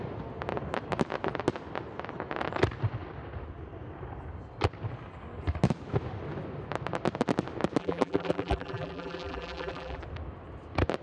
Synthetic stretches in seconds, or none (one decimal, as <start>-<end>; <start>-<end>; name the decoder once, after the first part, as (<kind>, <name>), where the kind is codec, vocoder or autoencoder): 7.8-10.0 (vocoder, BigVGAN v2)